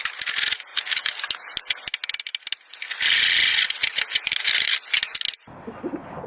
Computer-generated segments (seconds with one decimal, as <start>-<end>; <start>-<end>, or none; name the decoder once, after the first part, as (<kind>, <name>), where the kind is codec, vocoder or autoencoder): none